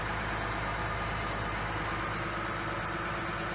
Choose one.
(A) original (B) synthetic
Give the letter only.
A